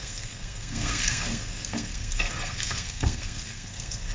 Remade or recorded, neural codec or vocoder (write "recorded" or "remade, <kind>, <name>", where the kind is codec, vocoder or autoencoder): remade, codec, SNAC